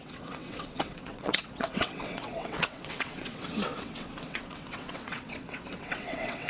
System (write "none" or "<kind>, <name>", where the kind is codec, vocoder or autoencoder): vocoder, WaveNeXt